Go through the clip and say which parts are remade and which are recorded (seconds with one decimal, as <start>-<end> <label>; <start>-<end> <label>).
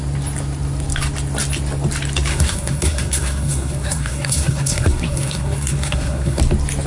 0.0-2.3 recorded; 2.3-6.4 remade; 6.4-6.9 recorded